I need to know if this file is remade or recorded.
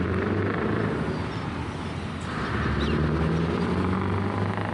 recorded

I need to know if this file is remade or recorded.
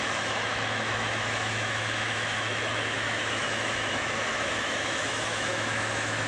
remade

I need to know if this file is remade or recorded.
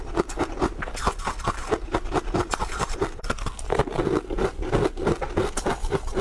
recorded